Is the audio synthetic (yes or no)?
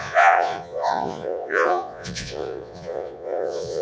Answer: yes